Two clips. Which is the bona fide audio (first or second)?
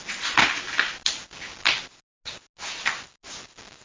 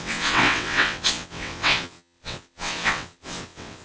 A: first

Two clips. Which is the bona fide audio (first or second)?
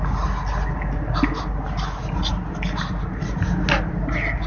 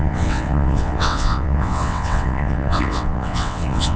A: first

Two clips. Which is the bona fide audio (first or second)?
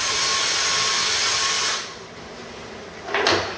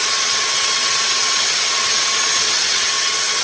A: first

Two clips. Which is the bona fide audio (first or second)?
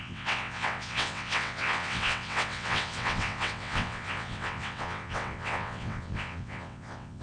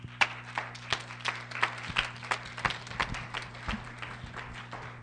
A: second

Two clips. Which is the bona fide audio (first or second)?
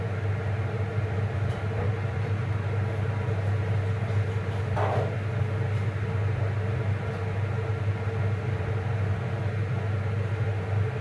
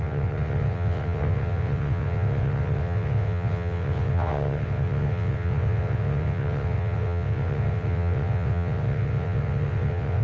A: first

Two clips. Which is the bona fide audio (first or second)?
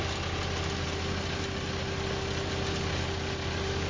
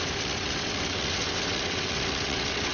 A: first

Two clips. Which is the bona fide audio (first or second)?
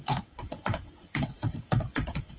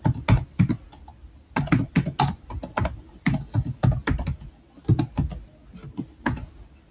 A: second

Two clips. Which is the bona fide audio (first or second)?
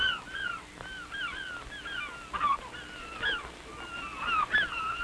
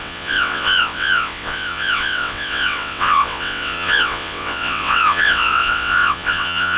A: first